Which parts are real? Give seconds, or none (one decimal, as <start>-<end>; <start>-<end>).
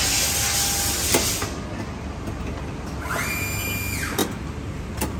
0.0-4.2